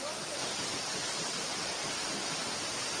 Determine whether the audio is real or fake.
real